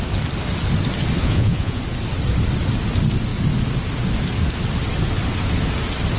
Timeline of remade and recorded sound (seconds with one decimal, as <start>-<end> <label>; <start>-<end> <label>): 0.0-1.2 recorded; 1.2-1.8 remade; 1.8-6.2 recorded